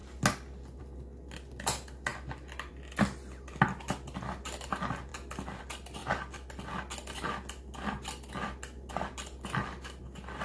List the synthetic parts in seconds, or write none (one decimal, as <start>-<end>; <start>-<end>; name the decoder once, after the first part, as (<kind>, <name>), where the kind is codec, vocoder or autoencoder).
none